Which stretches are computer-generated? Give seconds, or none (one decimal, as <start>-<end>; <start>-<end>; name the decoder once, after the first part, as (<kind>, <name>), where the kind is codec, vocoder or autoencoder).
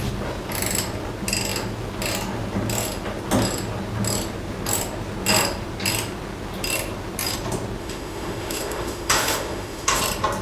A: 7.8-10.0 (autoencoder, DAC-VAE)